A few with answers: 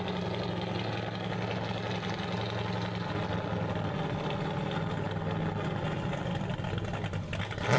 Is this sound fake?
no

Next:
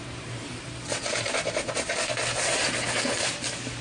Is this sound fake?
yes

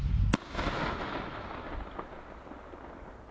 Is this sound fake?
no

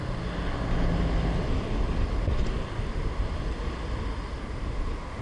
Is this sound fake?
no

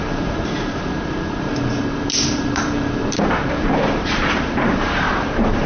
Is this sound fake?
yes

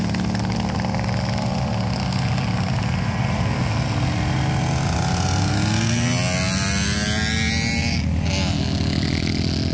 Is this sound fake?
no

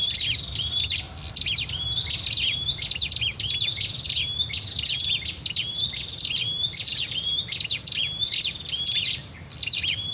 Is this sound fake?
no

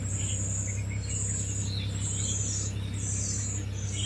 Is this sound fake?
no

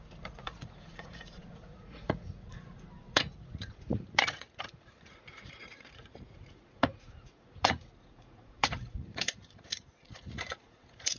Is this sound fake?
yes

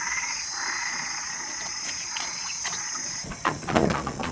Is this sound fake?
yes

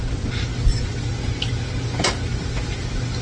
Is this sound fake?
no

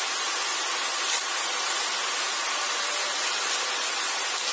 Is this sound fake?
no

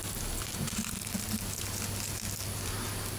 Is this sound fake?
no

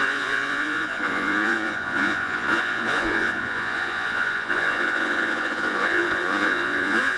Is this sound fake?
yes